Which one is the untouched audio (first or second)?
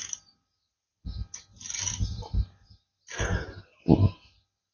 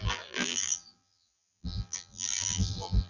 first